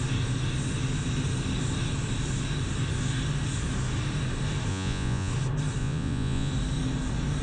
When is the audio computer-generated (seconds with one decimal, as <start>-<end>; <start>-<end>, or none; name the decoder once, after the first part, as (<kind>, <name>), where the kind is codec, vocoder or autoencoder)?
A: 4.7-5.3 (vocoder, Vocos); 5.8-6.5